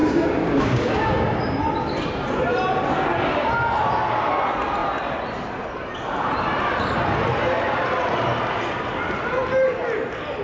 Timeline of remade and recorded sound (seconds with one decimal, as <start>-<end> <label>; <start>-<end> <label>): 0.0-1.4 remade; 1.4-10.4 recorded